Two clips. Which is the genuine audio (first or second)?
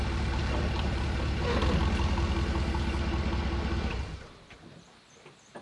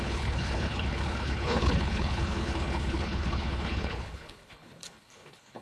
first